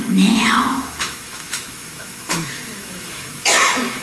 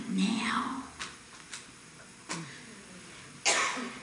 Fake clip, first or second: first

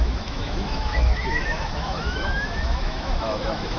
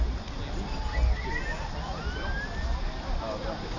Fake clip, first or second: first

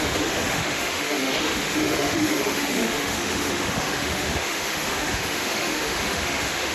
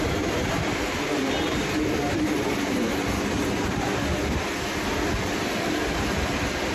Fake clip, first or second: first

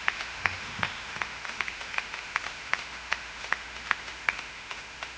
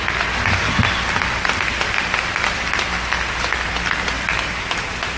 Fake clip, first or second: first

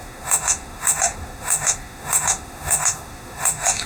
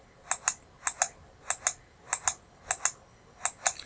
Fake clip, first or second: first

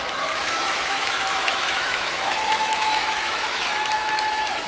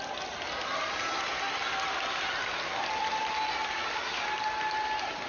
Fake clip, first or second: first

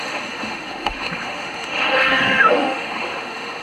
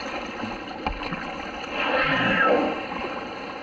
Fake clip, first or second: first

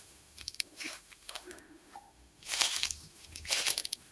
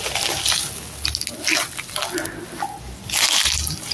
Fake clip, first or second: first